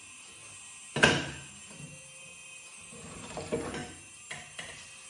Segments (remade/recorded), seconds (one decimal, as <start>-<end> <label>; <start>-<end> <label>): 0.0-0.4 remade; 0.4-1.0 recorded; 1.0-5.1 remade